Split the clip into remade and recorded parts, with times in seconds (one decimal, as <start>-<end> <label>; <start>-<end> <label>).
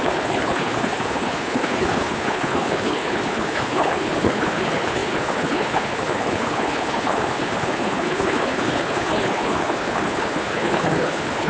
0.0-11.5 remade